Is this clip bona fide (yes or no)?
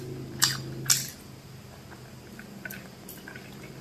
yes